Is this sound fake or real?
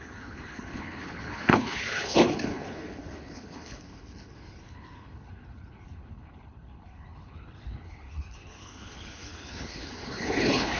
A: fake